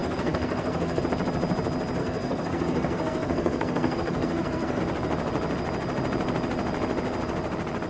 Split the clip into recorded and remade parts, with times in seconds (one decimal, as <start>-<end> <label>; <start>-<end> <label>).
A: 0.0-1.0 remade; 1.0-2.0 recorded; 2.0-4.8 remade; 4.8-7.9 recorded